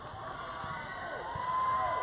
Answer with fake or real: real